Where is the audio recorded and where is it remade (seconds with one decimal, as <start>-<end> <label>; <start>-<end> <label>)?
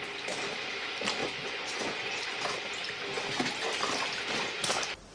0.0-1.2 recorded; 1.2-2.6 remade; 2.6-5.1 recorded